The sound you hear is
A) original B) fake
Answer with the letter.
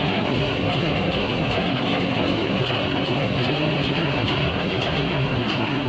B